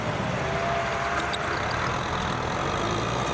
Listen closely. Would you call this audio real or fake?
real